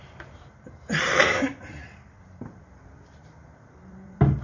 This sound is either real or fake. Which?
fake